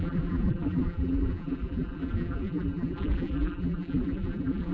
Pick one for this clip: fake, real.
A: fake